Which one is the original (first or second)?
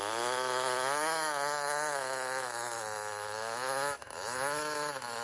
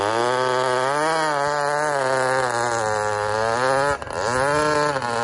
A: second